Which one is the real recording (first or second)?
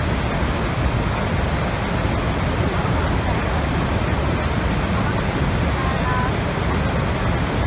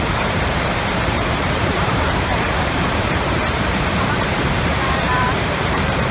first